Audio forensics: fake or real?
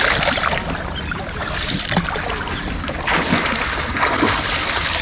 fake